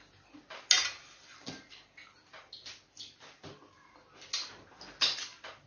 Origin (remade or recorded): recorded